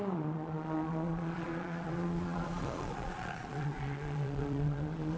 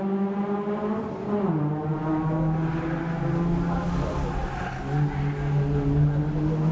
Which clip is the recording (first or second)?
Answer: second